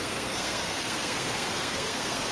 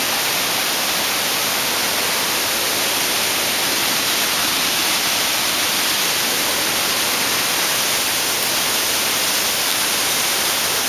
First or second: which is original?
second